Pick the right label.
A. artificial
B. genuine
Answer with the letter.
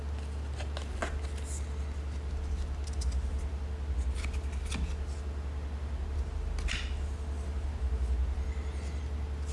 B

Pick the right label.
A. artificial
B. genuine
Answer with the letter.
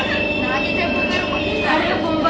B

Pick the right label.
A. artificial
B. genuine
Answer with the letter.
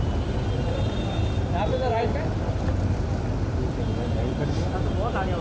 A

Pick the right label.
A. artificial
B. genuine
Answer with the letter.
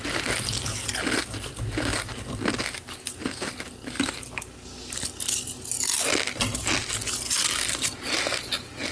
B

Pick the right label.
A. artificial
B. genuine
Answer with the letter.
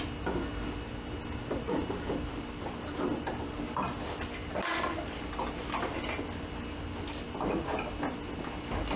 B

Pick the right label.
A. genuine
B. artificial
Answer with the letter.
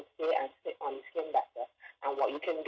A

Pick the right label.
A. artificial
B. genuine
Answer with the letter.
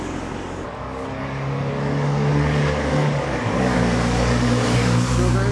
A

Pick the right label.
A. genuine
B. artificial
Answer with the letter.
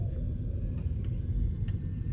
A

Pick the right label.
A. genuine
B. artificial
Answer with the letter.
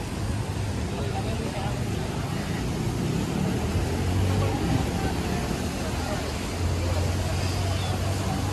A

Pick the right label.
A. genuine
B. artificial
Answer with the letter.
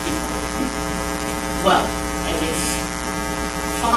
B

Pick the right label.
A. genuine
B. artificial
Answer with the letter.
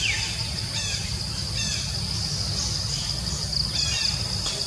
A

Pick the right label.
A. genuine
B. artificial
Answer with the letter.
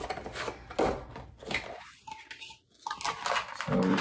A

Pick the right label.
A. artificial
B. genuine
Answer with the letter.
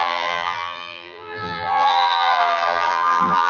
A